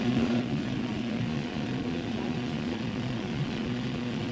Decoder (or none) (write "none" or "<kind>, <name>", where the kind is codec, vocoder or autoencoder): vocoder, Vocos